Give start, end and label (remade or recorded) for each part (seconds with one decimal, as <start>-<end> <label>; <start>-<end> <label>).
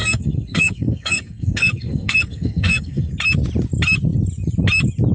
0.0-3.1 remade; 3.1-5.1 recorded